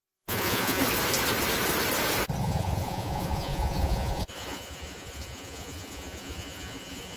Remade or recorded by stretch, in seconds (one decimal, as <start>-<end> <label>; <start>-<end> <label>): 0.0-0.8 remade; 0.8-2.4 recorded; 2.4-7.2 remade